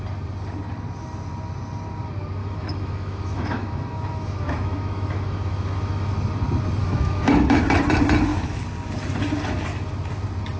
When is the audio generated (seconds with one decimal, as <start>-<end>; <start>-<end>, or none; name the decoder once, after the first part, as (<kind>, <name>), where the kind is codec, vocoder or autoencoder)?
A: 2.4-6.1 (autoencoder, DAC-VAE); 6.8-7.6